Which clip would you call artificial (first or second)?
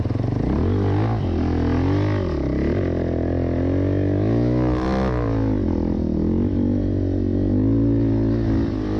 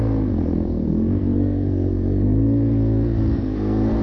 second